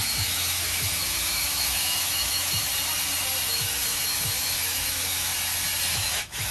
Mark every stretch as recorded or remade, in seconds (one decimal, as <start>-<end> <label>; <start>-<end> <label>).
0.0-2.7 remade; 2.7-3.5 recorded; 3.5-5.3 remade; 5.3-5.9 recorded; 5.9-6.5 remade